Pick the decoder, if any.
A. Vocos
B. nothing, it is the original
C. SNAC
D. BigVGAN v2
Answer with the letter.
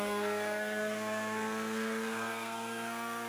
C